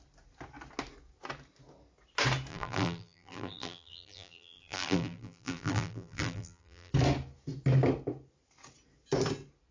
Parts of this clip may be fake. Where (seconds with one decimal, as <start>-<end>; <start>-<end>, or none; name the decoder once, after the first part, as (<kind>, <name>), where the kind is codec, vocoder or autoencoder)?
2.5-6.9 (vocoder, BigVGAN v2)